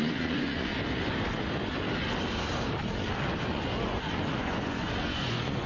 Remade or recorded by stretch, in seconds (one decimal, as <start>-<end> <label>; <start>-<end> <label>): 0.0-0.7 remade; 0.7-3.4 recorded; 3.4-5.7 remade